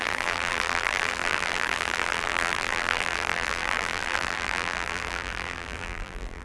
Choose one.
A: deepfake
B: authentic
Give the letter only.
A